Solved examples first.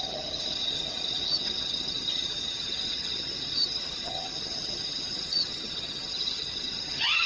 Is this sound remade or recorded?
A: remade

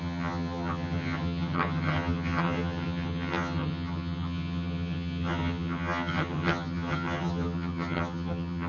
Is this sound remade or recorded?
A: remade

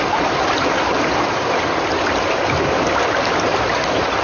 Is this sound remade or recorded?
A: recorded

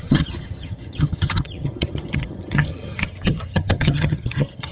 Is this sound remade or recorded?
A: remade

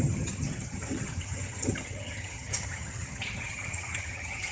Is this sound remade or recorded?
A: remade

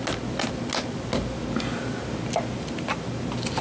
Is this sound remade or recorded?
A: recorded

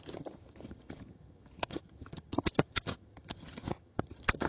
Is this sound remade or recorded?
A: remade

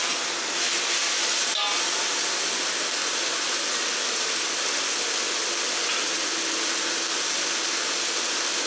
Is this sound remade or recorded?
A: recorded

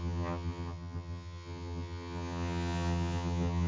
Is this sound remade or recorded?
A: remade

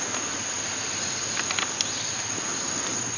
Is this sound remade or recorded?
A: recorded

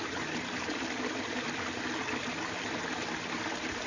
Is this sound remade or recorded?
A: recorded